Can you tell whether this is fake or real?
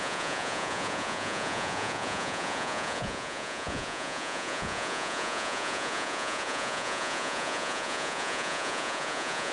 fake